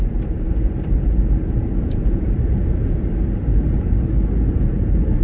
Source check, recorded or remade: remade